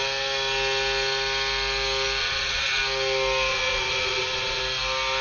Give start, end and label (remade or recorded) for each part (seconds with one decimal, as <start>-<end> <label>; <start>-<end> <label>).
0.0-2.2 recorded; 2.2-2.8 remade; 2.8-3.5 recorded; 3.5-4.6 remade; 4.6-5.2 recorded